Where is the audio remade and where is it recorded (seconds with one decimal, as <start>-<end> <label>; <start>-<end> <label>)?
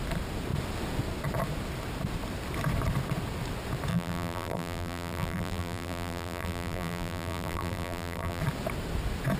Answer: 0.0-3.9 recorded; 3.9-8.4 remade; 8.4-9.4 recorded